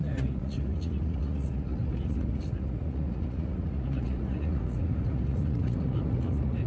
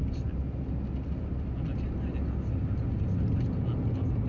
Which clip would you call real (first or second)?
second